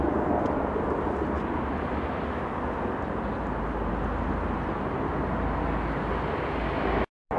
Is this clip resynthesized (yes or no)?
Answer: no